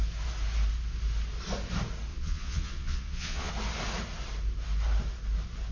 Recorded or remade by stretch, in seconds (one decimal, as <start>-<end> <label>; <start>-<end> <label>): 0.0-2.1 recorded; 2.1-3.5 remade; 3.5-5.7 recorded

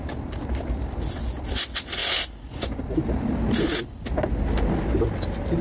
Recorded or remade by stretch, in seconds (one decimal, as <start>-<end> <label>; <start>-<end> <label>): 0.0-5.6 recorded